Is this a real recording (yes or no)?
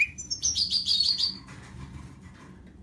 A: no